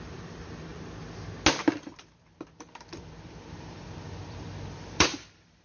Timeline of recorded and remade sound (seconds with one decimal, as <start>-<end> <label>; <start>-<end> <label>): 0.0-0.7 remade; 0.7-1.8 recorded; 1.8-5.6 remade

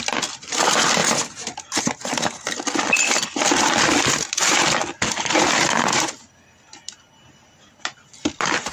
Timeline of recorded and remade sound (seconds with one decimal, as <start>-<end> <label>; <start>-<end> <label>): 0.0-8.7 recorded

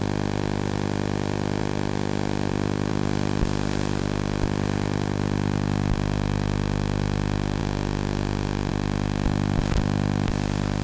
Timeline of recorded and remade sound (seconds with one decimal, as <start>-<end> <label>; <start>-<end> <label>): 0.0-7.6 remade; 7.6-8.7 recorded; 8.7-10.8 remade

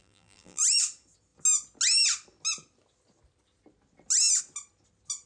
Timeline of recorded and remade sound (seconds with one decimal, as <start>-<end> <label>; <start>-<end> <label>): 0.0-0.6 remade; 0.6-5.3 recorded